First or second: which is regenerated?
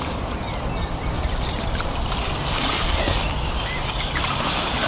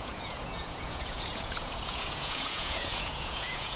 second